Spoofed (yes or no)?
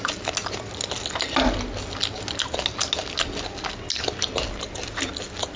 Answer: no